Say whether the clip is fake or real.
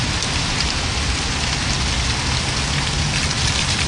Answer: real